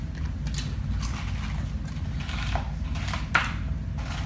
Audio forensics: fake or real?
real